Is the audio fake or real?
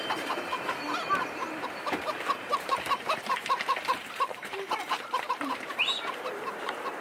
fake